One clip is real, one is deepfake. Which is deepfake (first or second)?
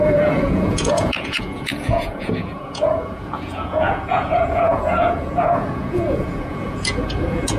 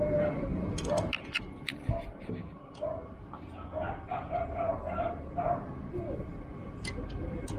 first